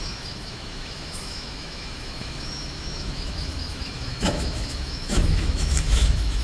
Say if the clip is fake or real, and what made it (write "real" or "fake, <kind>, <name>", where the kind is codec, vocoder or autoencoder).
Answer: fake, autoencoder, DAC-VAE